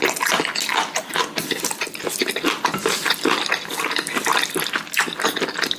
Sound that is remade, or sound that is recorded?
recorded